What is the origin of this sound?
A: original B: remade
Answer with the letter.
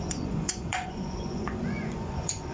B